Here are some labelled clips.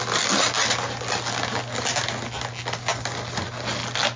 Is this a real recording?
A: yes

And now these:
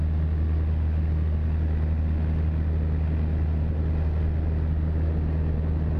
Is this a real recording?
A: yes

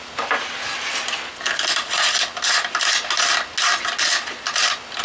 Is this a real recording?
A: yes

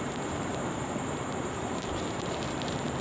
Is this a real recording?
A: no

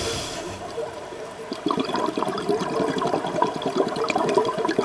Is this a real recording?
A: no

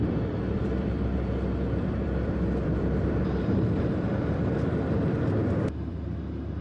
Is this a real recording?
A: no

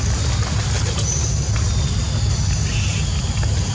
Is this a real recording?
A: yes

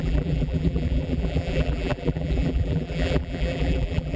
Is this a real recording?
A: no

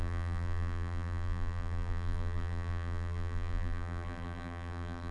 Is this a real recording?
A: no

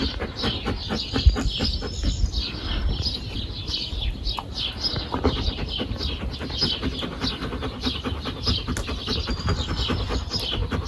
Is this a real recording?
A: yes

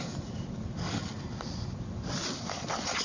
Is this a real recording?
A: yes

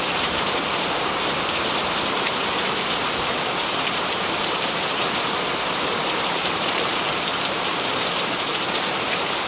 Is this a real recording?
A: no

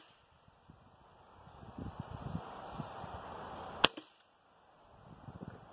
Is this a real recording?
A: yes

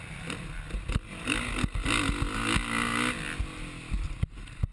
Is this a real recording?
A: yes